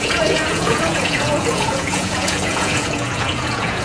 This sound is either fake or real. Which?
fake